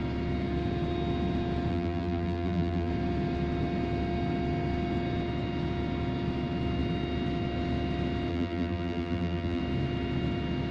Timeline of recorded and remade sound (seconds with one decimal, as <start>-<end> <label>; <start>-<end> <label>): 0.0-1.7 recorded; 1.7-2.9 remade; 2.9-8.3 recorded; 8.3-9.6 remade; 9.6-10.7 recorded